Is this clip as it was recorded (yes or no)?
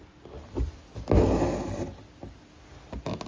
yes